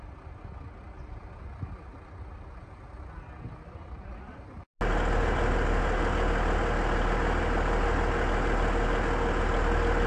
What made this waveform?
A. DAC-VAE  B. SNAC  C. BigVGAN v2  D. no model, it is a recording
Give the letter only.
D